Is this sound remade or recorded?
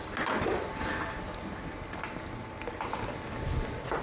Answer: recorded